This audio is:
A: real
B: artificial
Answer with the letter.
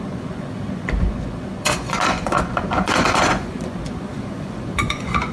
B